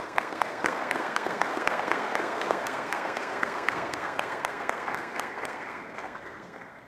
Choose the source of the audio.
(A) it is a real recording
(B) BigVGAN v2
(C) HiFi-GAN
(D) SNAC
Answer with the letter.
D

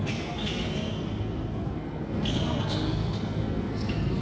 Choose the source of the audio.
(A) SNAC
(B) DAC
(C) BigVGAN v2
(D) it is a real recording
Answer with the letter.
A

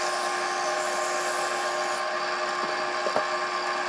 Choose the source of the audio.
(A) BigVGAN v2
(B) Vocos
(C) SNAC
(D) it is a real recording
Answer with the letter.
D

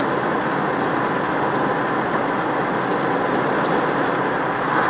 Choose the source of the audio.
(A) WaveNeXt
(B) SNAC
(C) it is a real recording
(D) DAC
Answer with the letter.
C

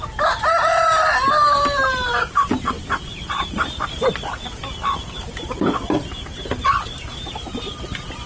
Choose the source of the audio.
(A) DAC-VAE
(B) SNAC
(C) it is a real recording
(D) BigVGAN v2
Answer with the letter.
C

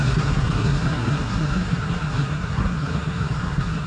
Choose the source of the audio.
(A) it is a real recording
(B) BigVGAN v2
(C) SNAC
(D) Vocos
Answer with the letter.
C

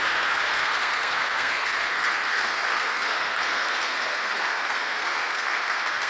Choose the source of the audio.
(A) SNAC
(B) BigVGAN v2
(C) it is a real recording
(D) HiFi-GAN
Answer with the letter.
A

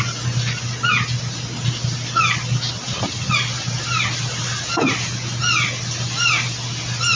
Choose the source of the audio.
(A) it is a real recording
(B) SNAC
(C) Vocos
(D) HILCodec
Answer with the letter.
A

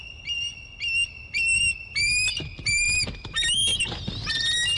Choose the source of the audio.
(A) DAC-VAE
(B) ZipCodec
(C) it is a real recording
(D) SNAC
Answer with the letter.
C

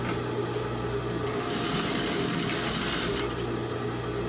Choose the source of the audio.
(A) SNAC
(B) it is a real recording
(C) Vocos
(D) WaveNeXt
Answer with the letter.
B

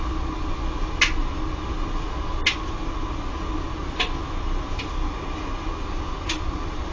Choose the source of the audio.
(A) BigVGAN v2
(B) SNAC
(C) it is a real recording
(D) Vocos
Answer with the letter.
C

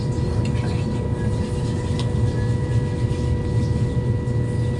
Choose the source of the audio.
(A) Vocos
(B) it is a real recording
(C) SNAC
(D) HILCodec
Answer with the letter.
B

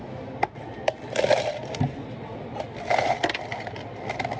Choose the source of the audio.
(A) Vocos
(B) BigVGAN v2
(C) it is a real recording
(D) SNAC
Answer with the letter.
C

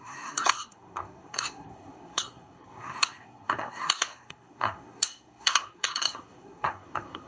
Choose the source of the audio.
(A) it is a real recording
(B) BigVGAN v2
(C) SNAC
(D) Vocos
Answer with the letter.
C